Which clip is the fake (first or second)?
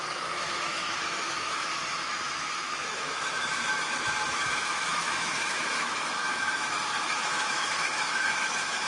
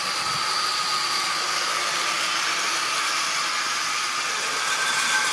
first